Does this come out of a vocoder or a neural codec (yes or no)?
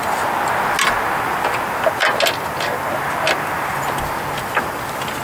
no